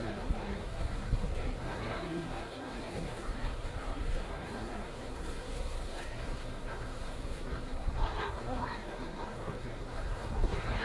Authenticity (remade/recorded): remade